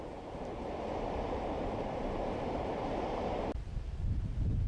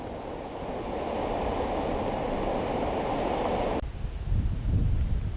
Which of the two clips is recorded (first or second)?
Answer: second